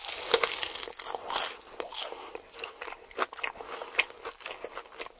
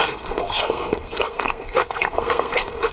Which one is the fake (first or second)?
second